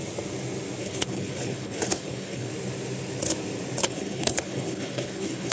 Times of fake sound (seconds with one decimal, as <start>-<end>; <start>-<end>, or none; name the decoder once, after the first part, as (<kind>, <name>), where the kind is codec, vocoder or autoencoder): 0.8-2.5 (codec, HILCodec); 3.8-5.5